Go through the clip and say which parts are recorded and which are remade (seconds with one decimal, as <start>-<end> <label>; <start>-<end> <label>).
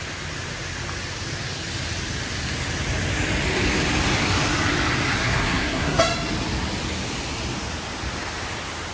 0.0-5.2 recorded; 5.2-6.0 remade; 6.0-8.9 recorded